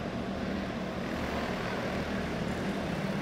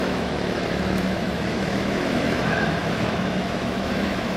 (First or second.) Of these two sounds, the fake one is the second